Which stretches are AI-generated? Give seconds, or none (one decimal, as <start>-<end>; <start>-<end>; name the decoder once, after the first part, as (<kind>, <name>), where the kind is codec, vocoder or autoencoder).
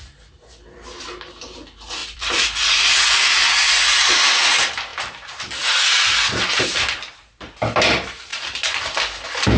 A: 2.0-3.7 (vocoder, BigVGAN v2); 8.3-9.0